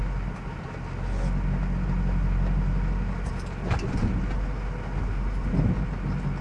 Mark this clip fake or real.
real